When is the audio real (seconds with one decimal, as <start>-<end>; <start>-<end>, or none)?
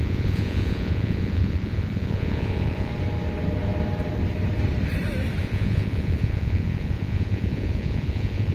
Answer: 2.9-5.4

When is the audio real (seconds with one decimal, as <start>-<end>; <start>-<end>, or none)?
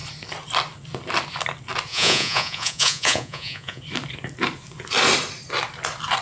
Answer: 0.0-1.9; 3.8-6.2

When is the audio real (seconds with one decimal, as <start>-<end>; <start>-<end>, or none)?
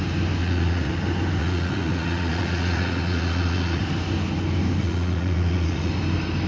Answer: 0.0-0.4; 0.9-1.4; 3.8-4.8; 5.9-6.5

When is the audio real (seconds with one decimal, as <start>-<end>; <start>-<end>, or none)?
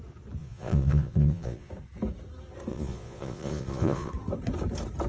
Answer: 0.0-0.4; 1.7-2.7; 4.1-5.1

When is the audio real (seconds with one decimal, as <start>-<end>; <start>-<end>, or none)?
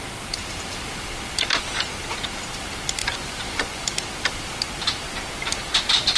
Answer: 0.0-3.0; 3.8-6.2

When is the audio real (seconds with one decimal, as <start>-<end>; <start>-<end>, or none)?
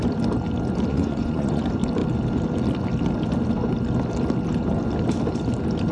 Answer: 0.0-0.9; 1.6-5.9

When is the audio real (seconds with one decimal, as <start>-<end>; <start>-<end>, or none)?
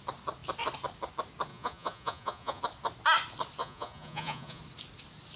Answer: 0.0-1.5; 2.6-3.6; 4.6-5.4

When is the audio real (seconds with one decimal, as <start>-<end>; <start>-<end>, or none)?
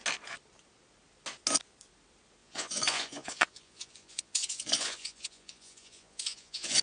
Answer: 0.0-2.4